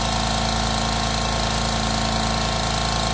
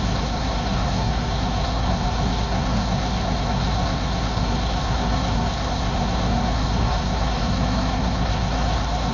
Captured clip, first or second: first